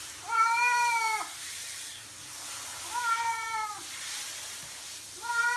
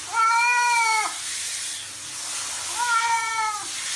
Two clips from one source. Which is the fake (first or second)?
first